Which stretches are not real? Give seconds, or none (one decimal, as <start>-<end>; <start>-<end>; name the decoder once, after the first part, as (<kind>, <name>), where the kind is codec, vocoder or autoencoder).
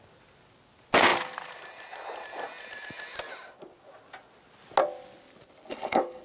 5.7-6.2 (codec, HILCodec)